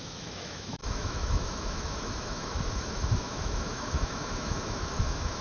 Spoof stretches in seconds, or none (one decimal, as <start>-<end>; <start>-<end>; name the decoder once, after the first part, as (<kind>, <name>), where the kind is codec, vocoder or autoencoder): 0.0-5.4 (autoencoder, DAC-VAE)